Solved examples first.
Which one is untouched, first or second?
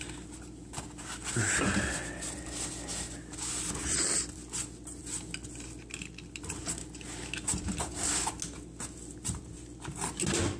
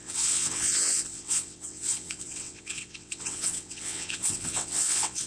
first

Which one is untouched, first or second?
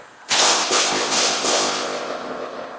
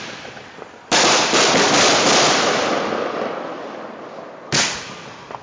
second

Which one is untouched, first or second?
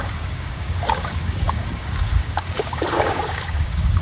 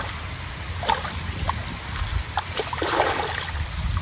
second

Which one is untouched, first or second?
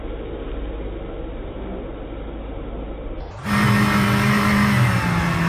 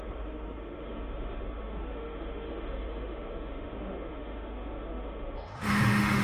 first